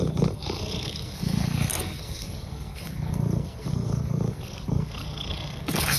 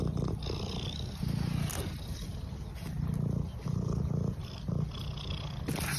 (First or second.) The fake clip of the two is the first